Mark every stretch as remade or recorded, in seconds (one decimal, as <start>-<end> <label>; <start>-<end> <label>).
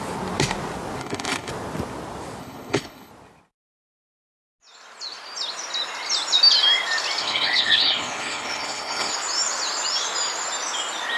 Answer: 0.0-1.0 recorded; 1.0-1.5 remade; 1.5-2.4 recorded; 2.4-3.1 remade; 3.1-7.2 recorded; 7.2-9.1 remade; 9.1-11.2 recorded